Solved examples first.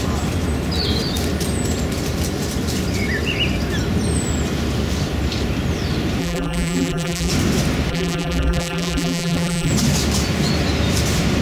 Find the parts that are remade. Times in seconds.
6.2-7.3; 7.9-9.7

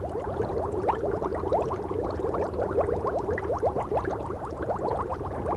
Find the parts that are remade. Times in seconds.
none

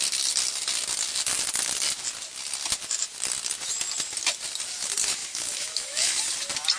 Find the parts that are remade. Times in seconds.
5.2-6.2